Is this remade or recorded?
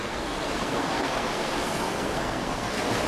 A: remade